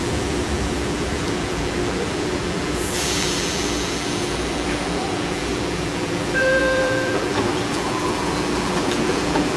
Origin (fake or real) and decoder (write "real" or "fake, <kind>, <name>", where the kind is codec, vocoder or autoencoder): fake, vocoder, BigVGAN v2